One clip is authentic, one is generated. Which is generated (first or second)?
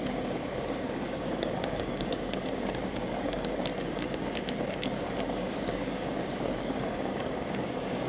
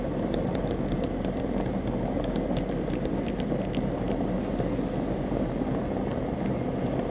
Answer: first